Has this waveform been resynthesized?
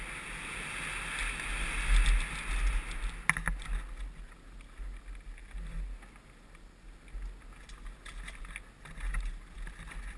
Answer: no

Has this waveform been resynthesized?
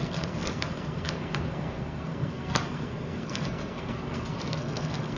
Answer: yes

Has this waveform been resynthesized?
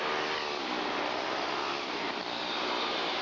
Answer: no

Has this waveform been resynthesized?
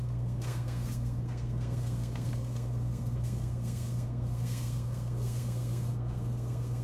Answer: yes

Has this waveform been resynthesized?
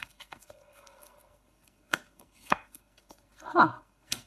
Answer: yes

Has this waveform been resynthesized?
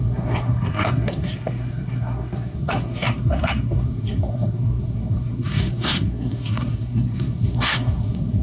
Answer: yes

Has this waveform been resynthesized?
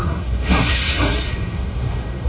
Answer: yes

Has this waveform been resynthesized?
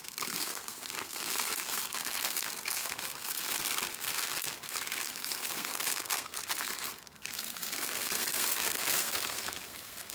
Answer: yes